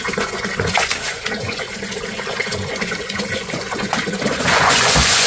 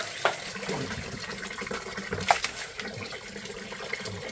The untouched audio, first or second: second